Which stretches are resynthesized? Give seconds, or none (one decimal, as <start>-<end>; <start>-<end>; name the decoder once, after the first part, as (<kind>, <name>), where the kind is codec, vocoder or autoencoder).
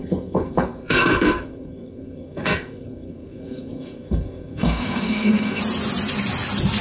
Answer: 0.0-5.6 (codec, SNAC)